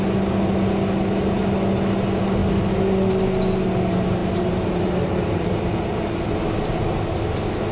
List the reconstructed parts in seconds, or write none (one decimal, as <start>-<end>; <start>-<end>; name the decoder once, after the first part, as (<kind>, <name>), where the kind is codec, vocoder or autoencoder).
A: 4.2-6.0 (vocoder, BigVGAN v2)